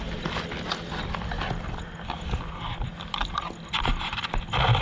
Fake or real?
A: real